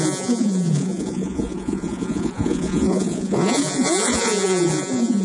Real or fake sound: fake